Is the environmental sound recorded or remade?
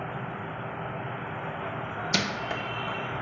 recorded